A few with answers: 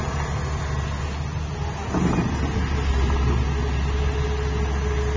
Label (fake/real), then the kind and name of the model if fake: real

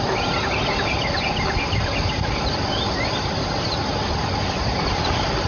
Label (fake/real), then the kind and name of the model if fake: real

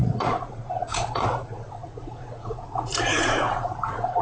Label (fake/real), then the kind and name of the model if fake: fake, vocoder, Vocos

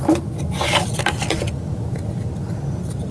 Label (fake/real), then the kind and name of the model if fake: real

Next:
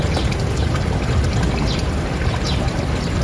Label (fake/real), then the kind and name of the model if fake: real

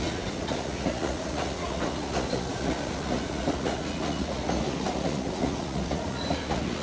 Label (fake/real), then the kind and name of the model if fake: fake, vocoder, Vocos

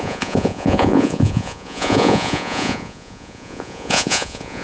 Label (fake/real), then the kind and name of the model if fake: fake, vocoder, Vocos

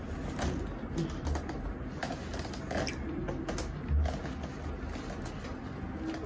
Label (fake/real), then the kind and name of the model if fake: real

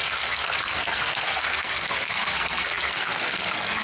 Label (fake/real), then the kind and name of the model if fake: fake, codec, SNAC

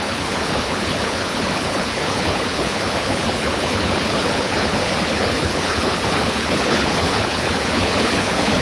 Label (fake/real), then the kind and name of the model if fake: fake, codec, HILCodec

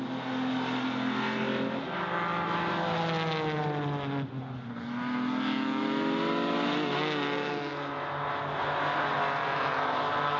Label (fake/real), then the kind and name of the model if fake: real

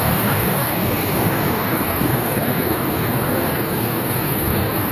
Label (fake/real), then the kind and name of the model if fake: fake, codec, DAC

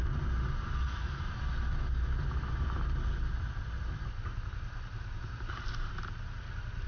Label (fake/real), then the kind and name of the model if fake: real